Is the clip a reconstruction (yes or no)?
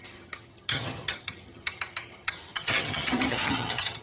yes